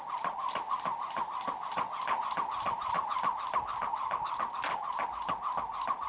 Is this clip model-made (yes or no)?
no